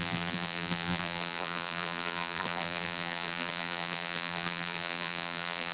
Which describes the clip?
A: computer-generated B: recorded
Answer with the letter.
A